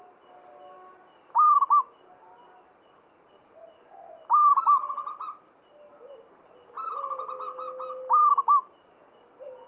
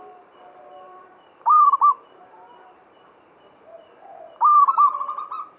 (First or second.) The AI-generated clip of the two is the second